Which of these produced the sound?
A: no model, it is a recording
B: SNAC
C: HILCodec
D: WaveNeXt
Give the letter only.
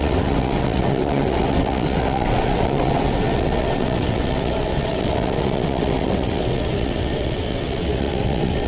D